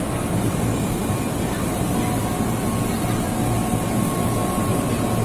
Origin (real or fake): real